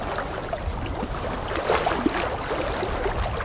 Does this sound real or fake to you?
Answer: real